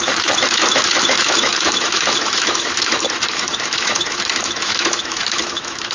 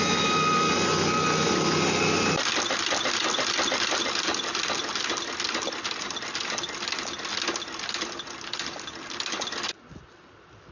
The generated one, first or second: first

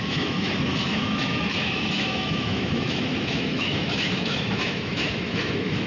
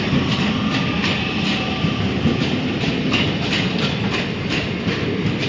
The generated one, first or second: first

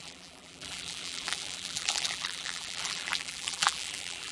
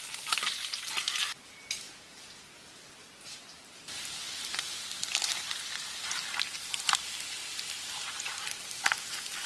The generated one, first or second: first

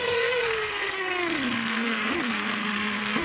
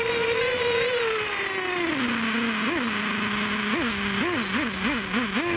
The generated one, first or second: first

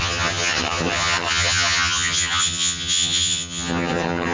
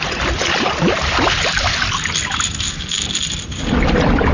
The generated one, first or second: first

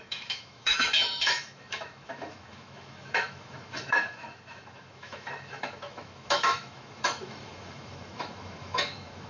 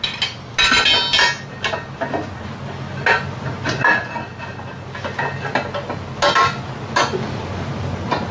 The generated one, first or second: first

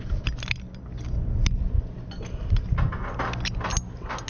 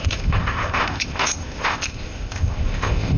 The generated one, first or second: second